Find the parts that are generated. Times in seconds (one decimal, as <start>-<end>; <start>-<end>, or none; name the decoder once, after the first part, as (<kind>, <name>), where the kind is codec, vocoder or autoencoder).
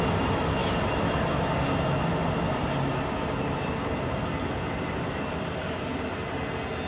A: none